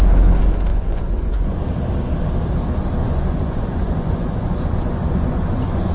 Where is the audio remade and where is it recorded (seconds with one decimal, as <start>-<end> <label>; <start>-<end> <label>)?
0.0-0.7 recorded; 0.7-1.6 remade; 1.6-3.0 recorded; 3.0-5.9 remade